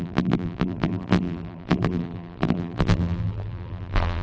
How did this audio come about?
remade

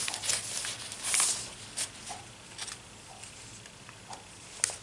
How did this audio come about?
recorded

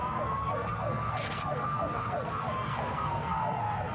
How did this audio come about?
remade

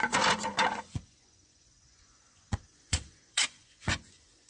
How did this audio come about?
remade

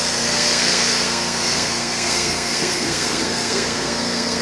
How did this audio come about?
remade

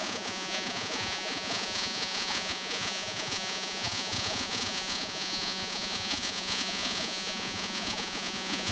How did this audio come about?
remade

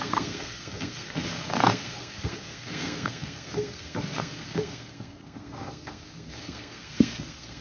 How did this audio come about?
remade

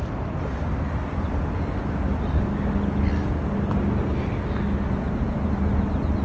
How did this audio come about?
recorded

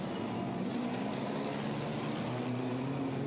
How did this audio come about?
recorded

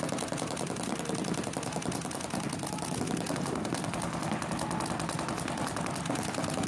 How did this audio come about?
recorded